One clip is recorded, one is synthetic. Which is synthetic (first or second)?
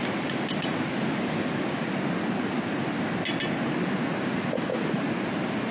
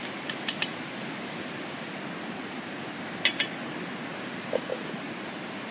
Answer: second